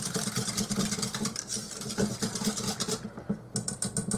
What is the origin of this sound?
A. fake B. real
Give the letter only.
B